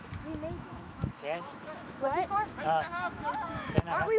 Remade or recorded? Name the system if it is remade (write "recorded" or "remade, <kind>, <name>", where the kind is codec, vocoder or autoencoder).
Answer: remade, autoencoder, DAC-VAE